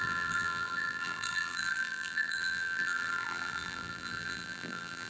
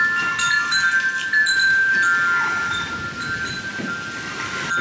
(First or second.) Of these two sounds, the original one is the second